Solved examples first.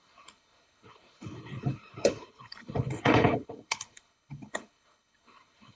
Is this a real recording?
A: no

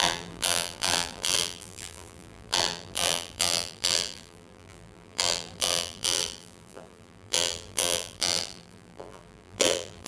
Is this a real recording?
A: no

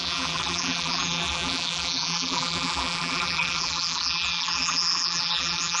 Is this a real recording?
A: no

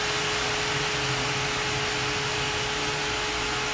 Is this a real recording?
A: yes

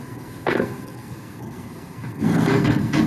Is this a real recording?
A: no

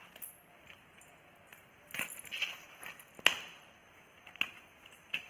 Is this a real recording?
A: yes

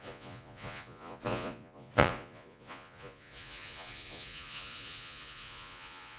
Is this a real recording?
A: no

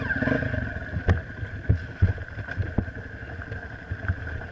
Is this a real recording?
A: yes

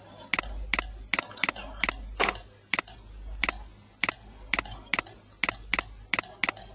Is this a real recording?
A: yes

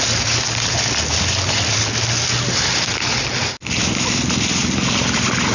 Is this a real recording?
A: yes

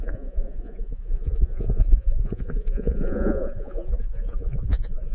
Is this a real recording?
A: no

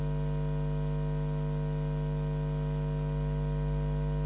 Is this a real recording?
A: yes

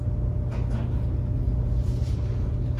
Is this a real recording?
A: yes